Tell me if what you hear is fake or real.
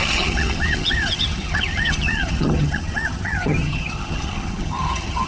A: fake